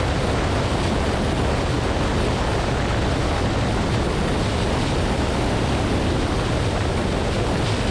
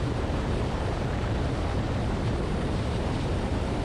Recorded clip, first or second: first